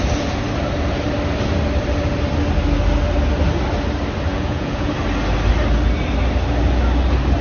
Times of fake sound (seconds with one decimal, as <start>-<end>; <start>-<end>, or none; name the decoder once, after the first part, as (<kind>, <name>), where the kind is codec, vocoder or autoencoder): 4.3-4.9 (vocoder, Vocos)